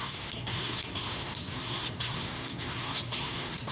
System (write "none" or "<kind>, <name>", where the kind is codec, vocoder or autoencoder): codec, SNAC